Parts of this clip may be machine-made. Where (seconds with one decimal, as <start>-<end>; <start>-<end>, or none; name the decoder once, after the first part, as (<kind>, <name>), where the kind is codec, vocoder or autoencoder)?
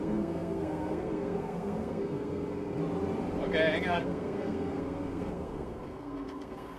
0.0-2.8 (codec, SNAC); 3.9-6.8